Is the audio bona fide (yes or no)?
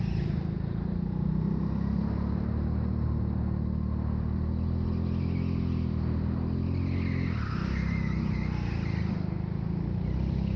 yes